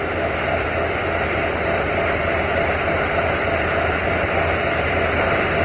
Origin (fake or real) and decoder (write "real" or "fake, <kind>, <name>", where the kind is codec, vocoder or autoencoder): real